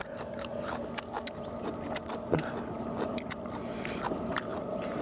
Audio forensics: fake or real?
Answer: real